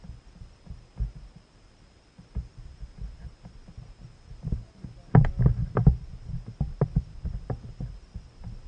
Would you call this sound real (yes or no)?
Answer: yes